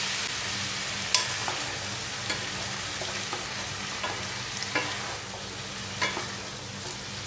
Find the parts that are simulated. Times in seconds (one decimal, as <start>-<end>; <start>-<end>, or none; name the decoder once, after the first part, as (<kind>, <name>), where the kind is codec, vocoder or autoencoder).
none